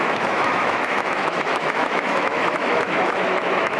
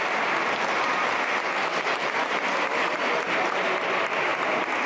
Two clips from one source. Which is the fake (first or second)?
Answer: first